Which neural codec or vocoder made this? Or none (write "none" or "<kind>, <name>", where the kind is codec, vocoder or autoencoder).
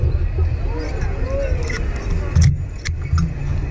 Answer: none